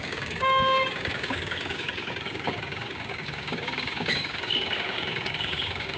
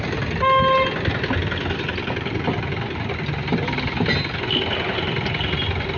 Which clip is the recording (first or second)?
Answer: second